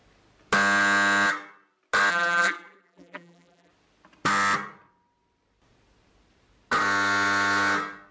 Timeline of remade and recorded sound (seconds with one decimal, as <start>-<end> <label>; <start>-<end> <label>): 0.0-2.1 recorded; 2.1-3.7 remade; 3.7-8.1 recorded